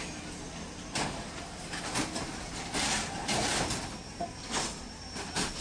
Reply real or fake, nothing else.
fake